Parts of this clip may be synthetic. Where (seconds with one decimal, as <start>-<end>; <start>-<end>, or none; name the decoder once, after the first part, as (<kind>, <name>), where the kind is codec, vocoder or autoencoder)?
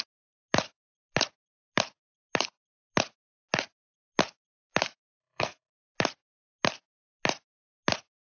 5.2-5.7 (codec, SNAC)